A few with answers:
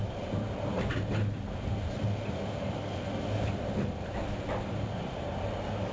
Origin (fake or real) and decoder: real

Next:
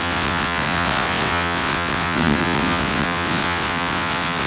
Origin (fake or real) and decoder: fake, vocoder, WaveNeXt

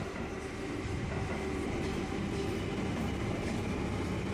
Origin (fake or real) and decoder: real